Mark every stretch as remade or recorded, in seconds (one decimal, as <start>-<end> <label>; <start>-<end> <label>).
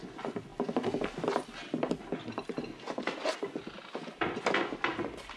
0.0-5.4 recorded